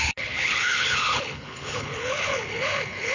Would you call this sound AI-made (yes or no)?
yes